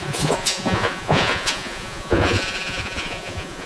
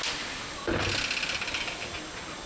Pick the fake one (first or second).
first